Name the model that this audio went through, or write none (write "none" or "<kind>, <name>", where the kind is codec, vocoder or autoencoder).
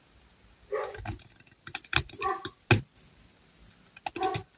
none